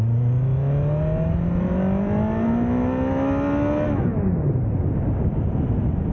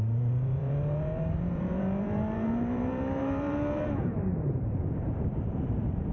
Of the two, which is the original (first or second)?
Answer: first